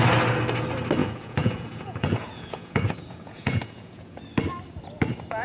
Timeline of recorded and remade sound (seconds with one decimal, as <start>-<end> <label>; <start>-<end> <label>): 0.0-1.0 recorded; 1.0-4.2 remade; 4.2-5.4 recorded

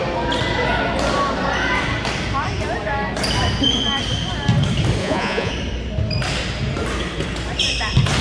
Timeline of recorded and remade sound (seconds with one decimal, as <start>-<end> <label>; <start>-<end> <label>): 0.0-5.0 recorded; 5.0-5.5 remade; 5.5-8.2 recorded

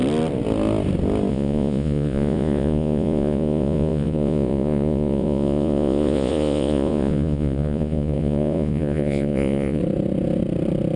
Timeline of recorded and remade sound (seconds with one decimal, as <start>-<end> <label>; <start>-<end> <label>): 0.0-1.3 recorded; 1.3-9.8 remade; 9.8-11.0 recorded

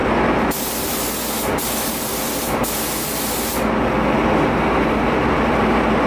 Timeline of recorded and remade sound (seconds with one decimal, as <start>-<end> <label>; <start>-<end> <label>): 0.0-6.1 recorded

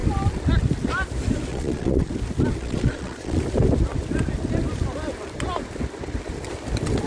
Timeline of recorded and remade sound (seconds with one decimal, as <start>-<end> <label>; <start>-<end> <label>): 0.0-1.5 recorded; 1.5-2.1 remade; 2.1-2.6 recorded; 2.6-3.4 remade; 3.4-7.1 recorded